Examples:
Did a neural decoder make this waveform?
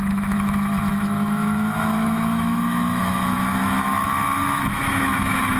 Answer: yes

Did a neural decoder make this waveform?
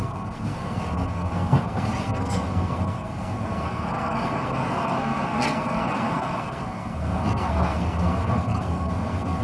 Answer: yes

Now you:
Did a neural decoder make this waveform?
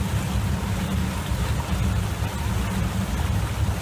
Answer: no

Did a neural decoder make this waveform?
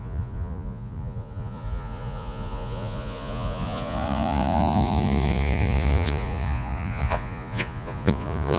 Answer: yes